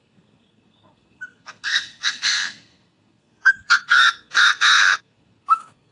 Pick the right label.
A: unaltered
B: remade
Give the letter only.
B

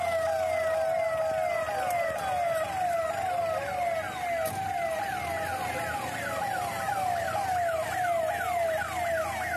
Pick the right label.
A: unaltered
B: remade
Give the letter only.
A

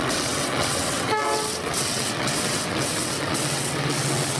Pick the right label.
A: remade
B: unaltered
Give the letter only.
A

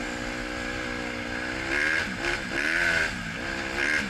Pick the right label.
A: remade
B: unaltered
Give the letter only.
B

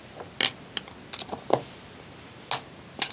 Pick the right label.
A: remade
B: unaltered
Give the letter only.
B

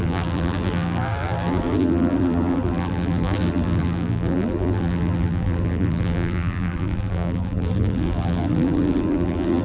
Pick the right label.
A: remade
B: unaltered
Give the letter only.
A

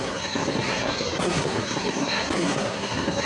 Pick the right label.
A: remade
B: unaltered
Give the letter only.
A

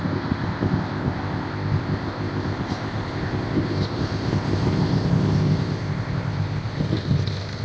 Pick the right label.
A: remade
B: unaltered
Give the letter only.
A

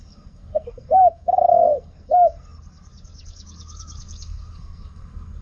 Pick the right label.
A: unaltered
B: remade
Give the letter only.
B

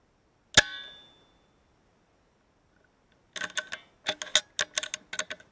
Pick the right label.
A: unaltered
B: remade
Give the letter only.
A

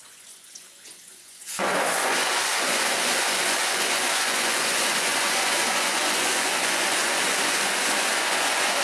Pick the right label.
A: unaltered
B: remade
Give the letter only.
B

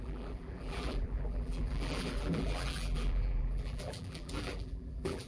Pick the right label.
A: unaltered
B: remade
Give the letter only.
B